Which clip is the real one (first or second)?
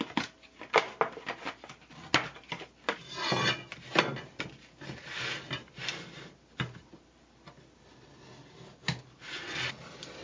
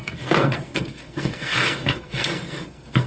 first